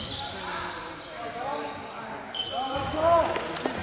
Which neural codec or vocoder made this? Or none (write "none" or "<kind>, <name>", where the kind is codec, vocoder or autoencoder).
none